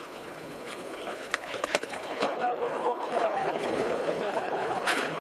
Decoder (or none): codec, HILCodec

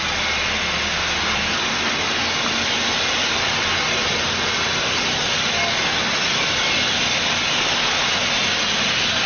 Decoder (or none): none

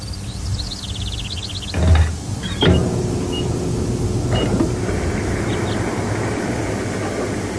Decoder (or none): none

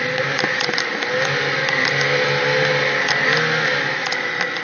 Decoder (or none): none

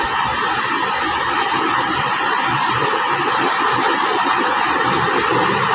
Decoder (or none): none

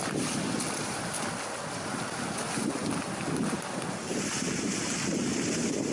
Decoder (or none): none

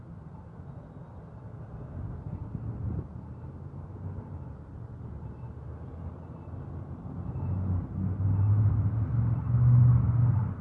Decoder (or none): none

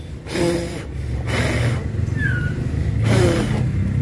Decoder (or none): none